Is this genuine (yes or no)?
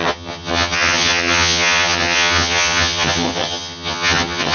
no